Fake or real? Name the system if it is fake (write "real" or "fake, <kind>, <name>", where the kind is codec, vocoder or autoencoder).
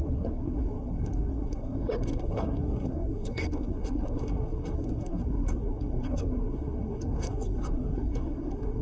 fake, codec, SNAC